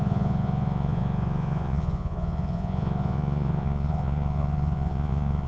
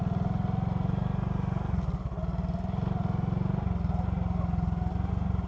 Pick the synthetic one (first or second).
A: first